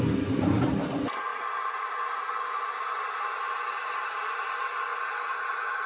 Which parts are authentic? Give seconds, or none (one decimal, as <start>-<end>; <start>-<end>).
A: 0.0-3.8; 4.4-5.9